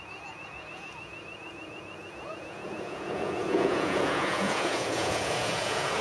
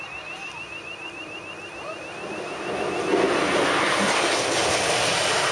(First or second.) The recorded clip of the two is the second